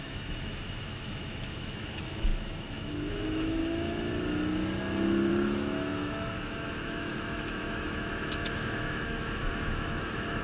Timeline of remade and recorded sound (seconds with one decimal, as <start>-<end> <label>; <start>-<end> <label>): 0.0-3.6 remade; 3.6-5.3 recorded; 5.3-10.4 remade